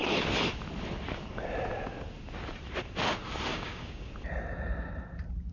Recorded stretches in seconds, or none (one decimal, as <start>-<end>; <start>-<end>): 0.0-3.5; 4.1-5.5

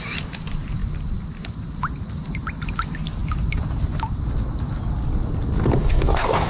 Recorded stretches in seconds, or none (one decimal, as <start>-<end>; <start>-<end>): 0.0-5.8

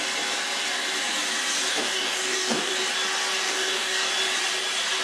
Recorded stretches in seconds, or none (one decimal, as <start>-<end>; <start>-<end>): 0.0-1.7; 2.7-3.4; 4.1-5.0

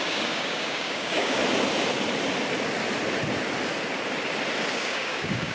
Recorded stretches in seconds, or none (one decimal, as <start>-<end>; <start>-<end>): 1.4-4.7

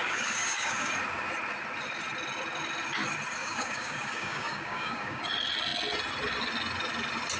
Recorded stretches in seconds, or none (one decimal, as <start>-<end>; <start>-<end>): 0.9-3.4; 5.2-7.4